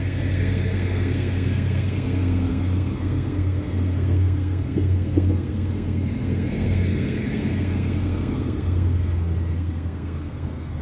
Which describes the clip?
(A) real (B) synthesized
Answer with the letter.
B